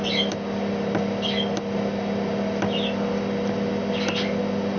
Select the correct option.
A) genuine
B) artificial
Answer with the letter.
A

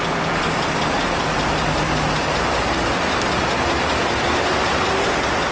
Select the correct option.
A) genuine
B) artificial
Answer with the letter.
A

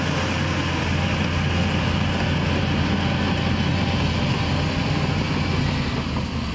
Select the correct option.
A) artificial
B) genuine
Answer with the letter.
B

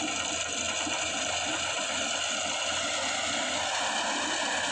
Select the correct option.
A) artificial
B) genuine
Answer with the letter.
B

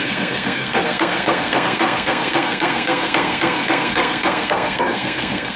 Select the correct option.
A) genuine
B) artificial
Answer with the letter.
B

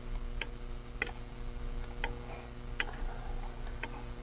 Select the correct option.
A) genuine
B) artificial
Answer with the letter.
A